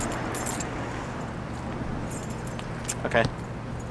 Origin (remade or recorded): recorded